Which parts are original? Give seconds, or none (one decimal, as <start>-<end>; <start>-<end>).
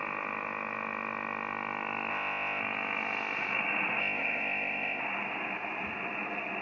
0.0-2.1; 2.6-4.0; 5.0-6.6